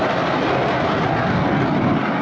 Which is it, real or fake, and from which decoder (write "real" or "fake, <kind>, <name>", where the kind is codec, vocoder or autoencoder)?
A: real